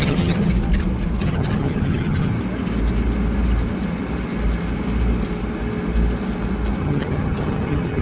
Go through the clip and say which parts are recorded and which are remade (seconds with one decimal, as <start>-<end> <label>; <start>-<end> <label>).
0.0-0.5 remade; 0.5-1.2 recorded; 1.2-2.3 remade; 2.3-6.8 recorded; 6.8-8.0 remade